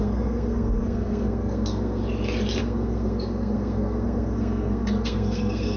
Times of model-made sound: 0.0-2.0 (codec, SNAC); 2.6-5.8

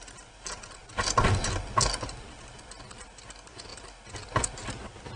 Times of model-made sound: none

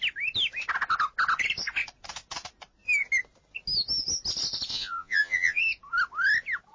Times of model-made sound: 4.7-5.6 (vocoder, Vocos)

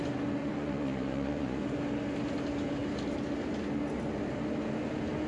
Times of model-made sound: 0.4-1.6 (vocoder, Vocos)